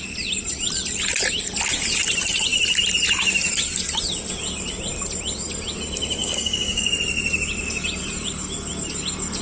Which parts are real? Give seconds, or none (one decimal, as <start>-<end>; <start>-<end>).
0.0-6.2; 6.9-9.4